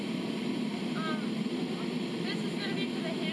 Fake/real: real